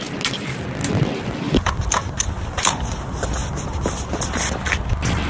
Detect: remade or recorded recorded